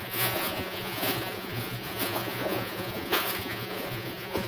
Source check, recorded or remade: remade